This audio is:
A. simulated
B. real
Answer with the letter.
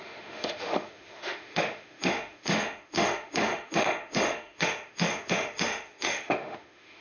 A